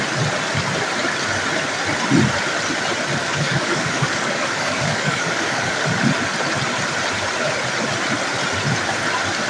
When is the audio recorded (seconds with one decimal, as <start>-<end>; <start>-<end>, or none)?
0.0-3.2; 5.8-9.5